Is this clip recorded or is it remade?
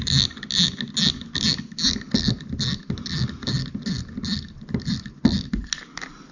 recorded